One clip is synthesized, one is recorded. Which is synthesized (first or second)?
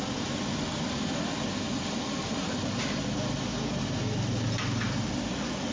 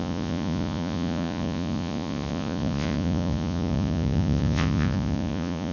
second